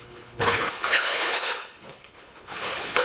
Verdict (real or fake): fake